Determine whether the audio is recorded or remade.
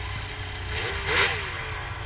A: recorded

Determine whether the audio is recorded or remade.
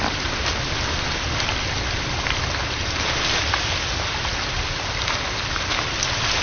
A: recorded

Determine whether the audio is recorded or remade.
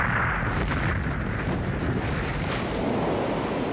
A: recorded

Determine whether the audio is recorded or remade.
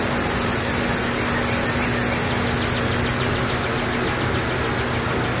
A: recorded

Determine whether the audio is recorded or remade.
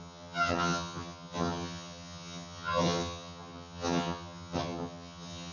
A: remade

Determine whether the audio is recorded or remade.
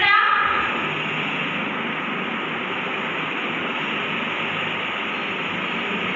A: recorded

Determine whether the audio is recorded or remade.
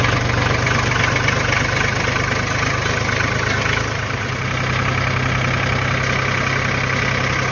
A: recorded